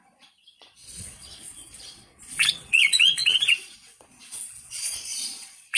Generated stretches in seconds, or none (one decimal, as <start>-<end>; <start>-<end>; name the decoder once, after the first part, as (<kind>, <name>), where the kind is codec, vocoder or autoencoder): 0.0-5.8 (vocoder, Vocos)